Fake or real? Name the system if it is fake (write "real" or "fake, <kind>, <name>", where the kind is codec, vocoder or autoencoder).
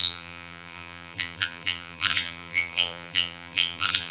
fake, vocoder, BigVGAN v2